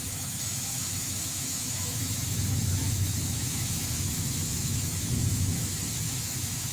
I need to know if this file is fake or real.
fake